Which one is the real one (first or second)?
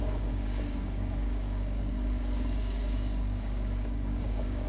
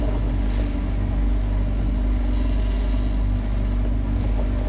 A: second